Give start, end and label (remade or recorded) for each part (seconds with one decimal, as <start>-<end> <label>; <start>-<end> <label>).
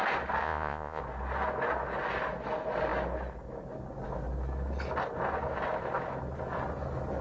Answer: 0.0-0.4 recorded; 0.4-1.0 remade; 1.0-7.2 recorded